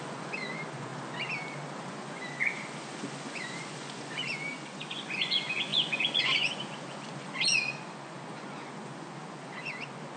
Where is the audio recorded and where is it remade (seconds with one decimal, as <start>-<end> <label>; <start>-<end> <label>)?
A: 0.0-0.9 remade; 0.9-1.9 recorded; 1.9-10.2 remade